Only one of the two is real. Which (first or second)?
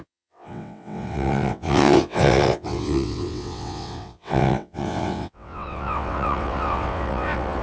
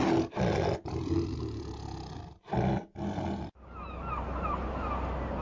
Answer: second